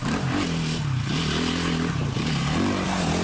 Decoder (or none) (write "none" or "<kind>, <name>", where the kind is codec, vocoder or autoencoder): none